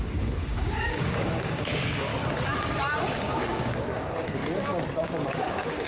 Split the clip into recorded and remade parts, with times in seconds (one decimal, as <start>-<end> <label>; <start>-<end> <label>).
0.0-2.1 remade; 2.1-3.0 recorded; 3.0-4.4 remade; 4.4-5.0 recorded; 5.0-5.9 remade